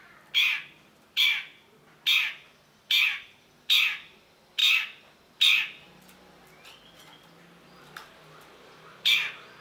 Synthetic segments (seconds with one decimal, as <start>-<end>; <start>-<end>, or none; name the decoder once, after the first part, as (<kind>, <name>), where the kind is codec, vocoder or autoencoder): 0.0-1.5 (vocoder, BigVGAN v2); 2.5-4.6; 5.2-9.6